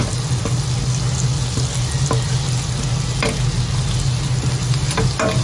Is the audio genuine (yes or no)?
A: yes